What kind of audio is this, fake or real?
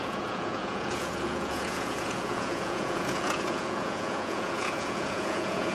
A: fake